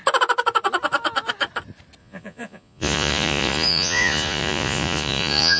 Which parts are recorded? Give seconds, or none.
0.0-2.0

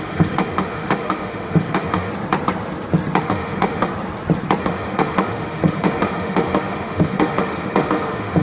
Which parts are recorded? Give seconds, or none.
2.1-3.2; 3.9-4.6

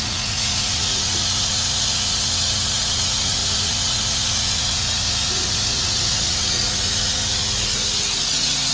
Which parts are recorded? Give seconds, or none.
none

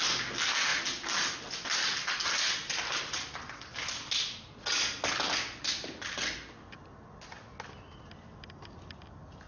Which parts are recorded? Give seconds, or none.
0.0-9.5